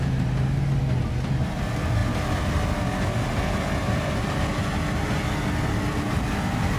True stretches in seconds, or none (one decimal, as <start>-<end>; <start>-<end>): 0.0-6.8